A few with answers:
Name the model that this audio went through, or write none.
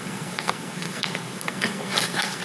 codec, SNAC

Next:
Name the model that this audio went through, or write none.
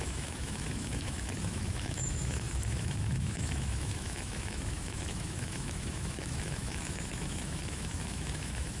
autoencoder, DAC-VAE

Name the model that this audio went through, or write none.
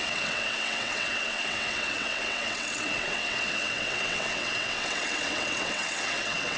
vocoder, WaveNeXt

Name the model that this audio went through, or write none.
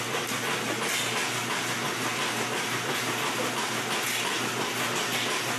none